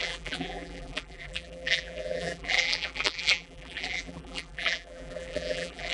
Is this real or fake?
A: fake